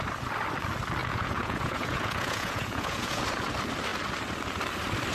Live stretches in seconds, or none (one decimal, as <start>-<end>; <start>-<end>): 0.0-1.0; 3.2-5.1